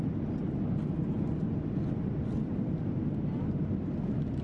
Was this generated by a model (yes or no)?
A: no